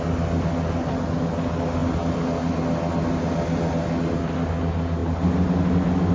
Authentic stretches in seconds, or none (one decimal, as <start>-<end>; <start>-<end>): 0.0-6.1